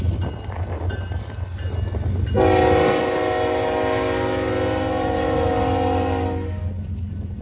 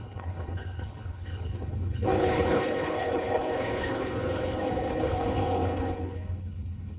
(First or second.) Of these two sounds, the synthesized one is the second